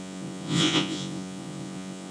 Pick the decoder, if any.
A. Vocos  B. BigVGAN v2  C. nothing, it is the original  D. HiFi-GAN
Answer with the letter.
A